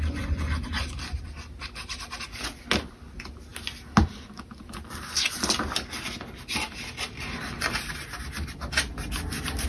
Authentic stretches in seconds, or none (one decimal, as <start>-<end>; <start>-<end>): 0.0-9.7